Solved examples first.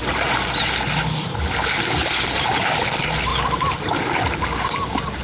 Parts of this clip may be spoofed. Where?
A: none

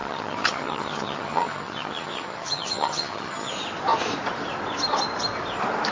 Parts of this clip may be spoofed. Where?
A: 0.0-3.5 (vocoder, HiFi-GAN)

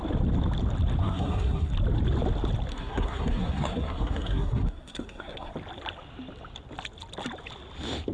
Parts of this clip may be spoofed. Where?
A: 1.0-1.7 (codec, SNAC); 2.7-5.5

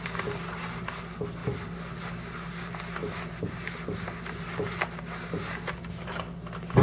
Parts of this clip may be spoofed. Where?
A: none

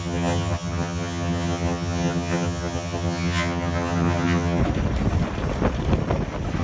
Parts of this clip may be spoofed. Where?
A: 0.0-4.6 (vocoder, HiFi-GAN)

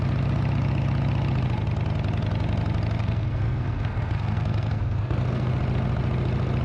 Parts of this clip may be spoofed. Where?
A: 3.0-5.5 (codec, SNAC)